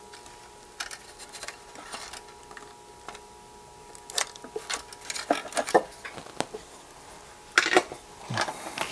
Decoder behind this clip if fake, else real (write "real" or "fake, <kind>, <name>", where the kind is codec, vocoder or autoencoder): real